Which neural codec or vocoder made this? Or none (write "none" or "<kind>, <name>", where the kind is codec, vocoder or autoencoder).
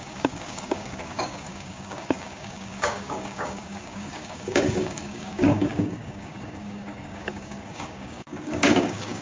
codec, DAC